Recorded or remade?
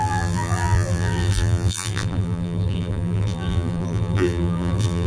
remade